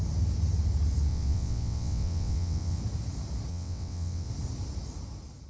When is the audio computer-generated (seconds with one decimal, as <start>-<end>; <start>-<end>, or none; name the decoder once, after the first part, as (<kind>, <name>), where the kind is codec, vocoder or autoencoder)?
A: 1.1-2.8 (vocoder, WaveNeXt); 3.5-4.3